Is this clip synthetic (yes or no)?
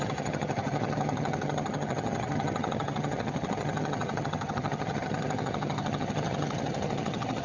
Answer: yes